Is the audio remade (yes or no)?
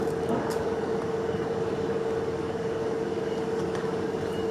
yes